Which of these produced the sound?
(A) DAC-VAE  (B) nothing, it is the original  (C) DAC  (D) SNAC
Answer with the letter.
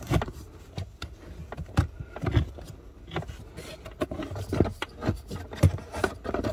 B